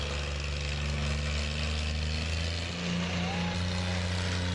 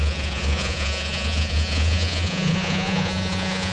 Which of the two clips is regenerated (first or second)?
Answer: second